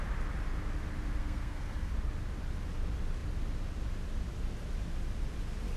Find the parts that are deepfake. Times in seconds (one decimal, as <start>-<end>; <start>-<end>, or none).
1.2-1.9